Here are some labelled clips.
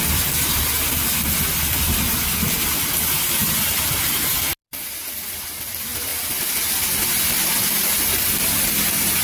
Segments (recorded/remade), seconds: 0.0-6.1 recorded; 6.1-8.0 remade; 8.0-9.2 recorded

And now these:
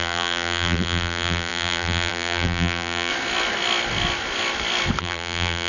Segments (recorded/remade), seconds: 0.0-3.1 remade; 3.1-5.0 recorded; 5.0-5.7 remade